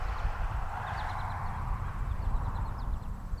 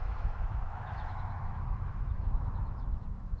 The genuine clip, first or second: first